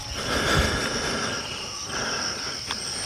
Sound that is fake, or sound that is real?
real